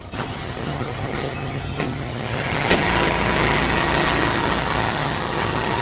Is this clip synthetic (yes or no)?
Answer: yes